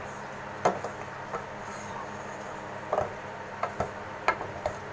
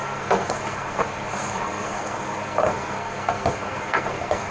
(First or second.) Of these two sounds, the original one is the first